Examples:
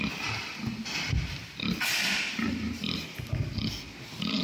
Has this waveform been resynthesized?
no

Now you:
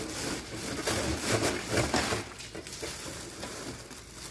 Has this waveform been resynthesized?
no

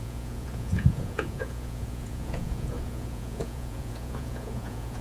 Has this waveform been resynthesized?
yes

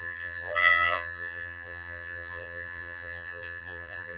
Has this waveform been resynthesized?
yes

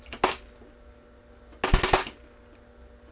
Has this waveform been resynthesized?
no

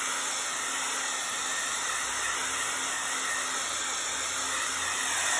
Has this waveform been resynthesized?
no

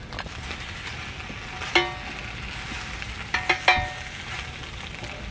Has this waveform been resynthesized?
no